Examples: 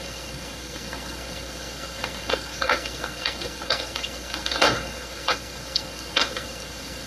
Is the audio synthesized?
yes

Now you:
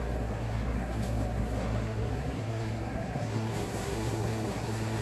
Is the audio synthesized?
yes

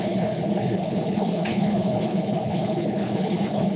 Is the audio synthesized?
yes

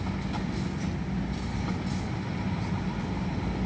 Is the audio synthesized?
no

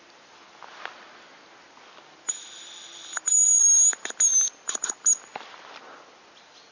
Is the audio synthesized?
no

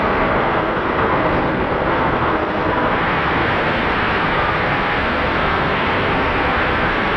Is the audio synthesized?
yes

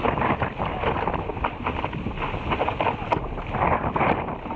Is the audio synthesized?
no